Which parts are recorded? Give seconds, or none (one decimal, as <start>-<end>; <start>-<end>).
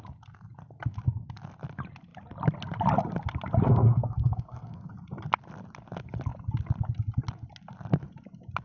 0.0-3.7; 4.9-8.6